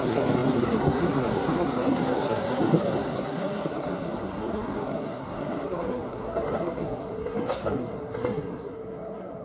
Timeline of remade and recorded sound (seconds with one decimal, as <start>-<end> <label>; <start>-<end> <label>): 0.0-9.4 remade